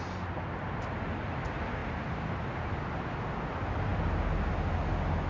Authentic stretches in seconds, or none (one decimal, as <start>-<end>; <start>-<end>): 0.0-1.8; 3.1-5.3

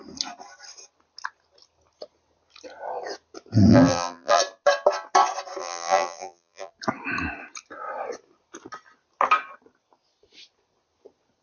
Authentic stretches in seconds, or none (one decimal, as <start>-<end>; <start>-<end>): 0.0-3.7; 4.4-5.6; 6.7-11.4

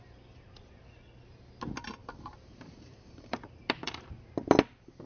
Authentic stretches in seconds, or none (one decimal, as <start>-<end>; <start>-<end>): 0.0-2.0; 4.1-5.1

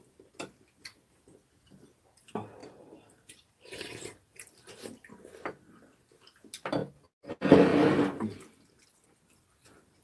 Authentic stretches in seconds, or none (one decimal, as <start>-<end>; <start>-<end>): 0.0-2.6; 4.8-10.0